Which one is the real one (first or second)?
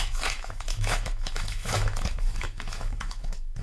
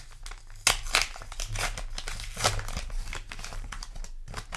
second